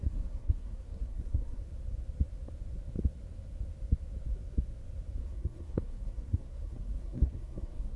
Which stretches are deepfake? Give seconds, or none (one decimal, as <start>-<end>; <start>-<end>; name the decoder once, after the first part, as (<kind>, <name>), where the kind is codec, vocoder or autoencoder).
0.0-1.6 (codec, SNAC); 5.2-8.0